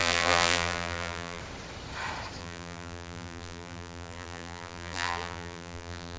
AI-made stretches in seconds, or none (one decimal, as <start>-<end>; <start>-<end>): 0.0-1.4; 2.4-6.2